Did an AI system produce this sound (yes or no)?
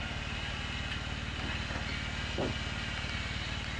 no